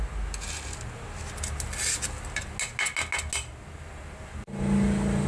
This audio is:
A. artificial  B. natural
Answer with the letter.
B